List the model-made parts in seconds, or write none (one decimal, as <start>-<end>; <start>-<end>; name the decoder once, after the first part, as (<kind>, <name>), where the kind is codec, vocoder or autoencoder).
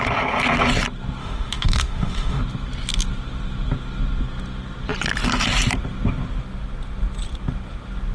1.2-2.4 (autoencoder, DAC-VAE)